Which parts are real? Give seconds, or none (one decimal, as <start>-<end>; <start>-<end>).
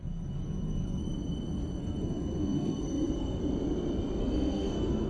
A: 1.0-1.8; 3.4-4.2